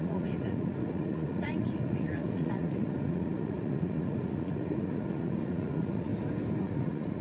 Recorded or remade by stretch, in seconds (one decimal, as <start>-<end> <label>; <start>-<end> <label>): 0.0-6.1 remade; 6.1-6.6 recorded; 6.6-7.2 remade